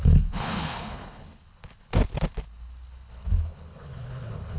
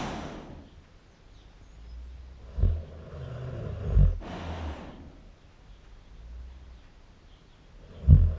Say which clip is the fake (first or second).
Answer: first